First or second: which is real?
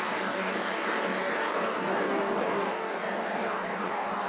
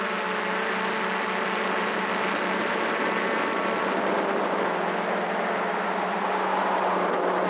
second